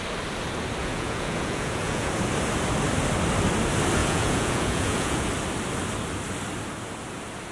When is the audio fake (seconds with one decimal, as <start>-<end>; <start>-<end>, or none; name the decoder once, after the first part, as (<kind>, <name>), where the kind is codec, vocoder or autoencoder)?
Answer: 0.8-2.1 (vocoder, Vocos); 4.0-5.3